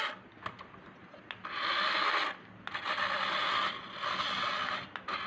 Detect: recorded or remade recorded